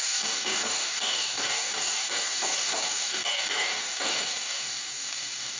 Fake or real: fake